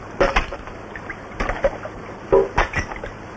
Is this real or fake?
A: real